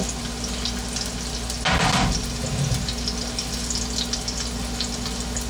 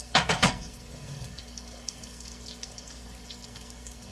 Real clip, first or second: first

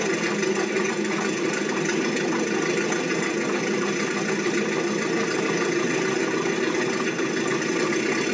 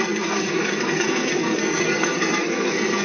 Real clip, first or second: first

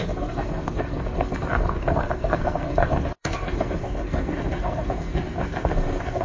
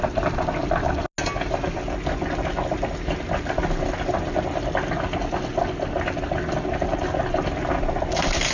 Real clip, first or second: second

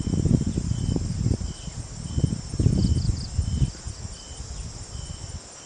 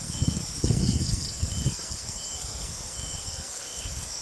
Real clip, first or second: first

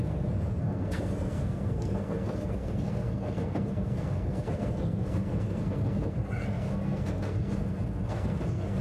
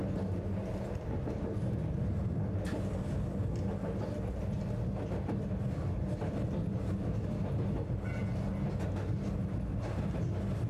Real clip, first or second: second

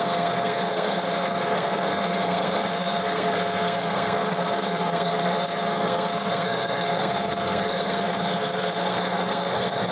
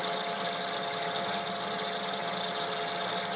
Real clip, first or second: second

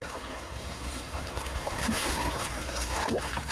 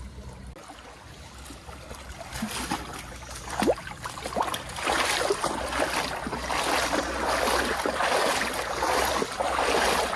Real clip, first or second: second